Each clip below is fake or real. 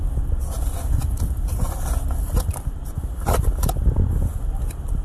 real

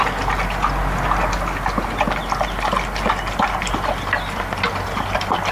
real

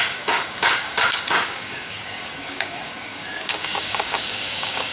fake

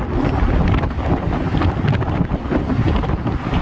real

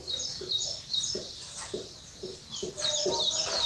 real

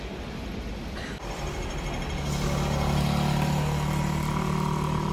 real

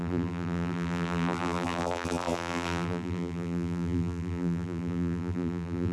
fake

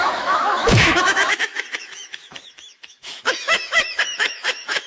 fake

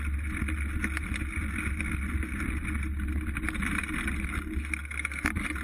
real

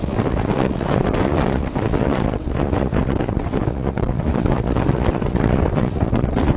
fake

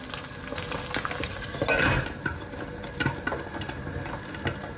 real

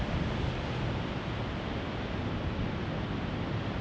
real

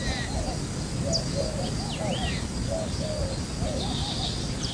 real